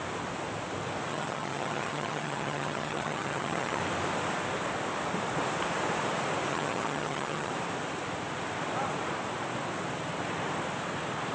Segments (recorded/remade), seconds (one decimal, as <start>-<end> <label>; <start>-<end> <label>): 0.0-1.1 recorded; 1.1-3.8 remade; 3.8-6.5 recorded; 6.5-7.5 remade; 7.5-11.3 recorded